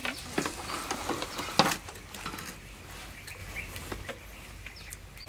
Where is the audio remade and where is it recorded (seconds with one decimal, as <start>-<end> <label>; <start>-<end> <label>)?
0.0-3.4 recorded; 3.4-4.1 remade; 4.1-5.3 recorded